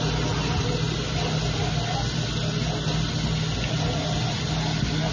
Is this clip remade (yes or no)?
no